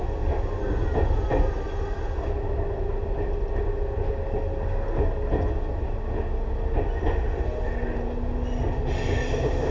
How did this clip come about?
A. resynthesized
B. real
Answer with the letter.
B